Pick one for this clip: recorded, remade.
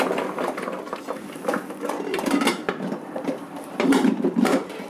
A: remade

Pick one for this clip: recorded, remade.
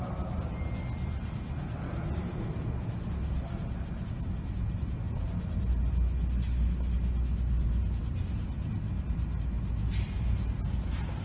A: recorded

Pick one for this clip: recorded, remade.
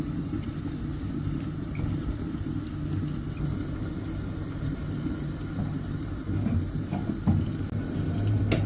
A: recorded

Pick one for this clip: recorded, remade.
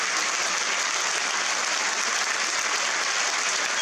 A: recorded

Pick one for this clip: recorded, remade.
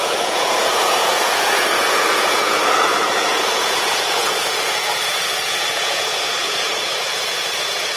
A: remade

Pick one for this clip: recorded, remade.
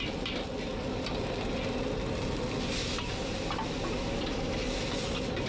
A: recorded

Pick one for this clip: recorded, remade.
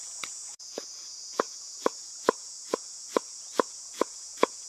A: remade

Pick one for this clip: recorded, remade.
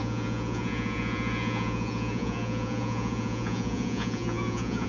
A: remade